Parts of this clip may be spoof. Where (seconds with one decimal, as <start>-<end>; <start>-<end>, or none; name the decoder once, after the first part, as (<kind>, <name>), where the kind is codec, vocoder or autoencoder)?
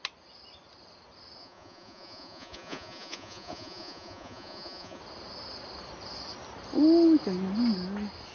1.4-5.0 (vocoder, Vocos)